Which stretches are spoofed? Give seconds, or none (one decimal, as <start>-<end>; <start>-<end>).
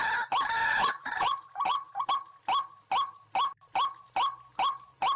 0.6-2.1